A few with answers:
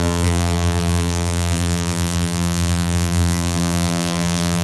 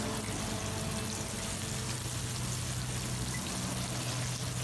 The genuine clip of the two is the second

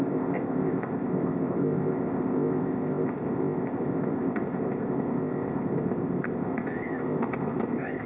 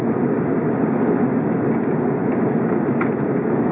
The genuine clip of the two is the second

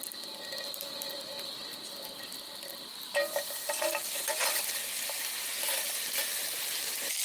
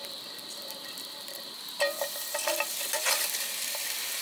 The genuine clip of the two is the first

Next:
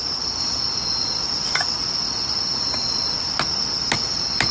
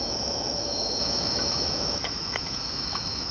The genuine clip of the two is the first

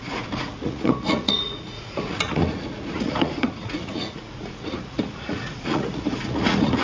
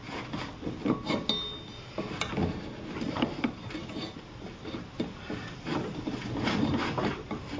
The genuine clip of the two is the second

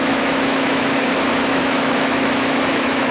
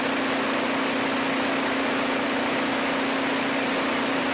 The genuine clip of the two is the second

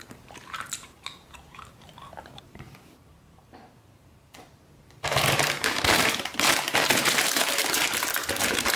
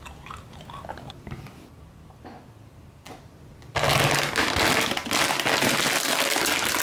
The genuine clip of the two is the second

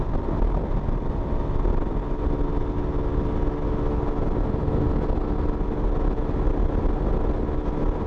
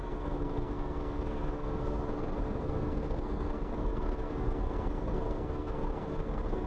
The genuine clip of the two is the first